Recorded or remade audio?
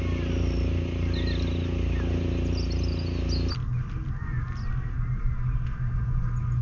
recorded